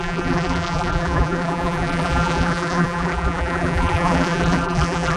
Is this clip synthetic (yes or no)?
yes